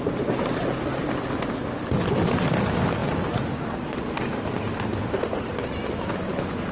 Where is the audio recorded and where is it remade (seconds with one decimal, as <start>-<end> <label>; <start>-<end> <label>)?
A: 0.0-4.9 recorded; 4.9-6.1 remade; 6.1-6.7 recorded